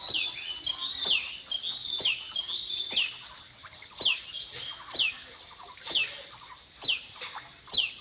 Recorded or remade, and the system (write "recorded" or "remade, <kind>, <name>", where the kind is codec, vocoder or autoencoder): recorded